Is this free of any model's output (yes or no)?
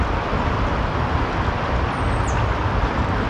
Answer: yes